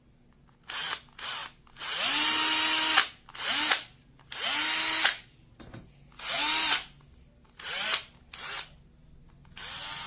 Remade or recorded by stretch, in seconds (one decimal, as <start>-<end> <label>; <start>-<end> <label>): 0.0-10.1 recorded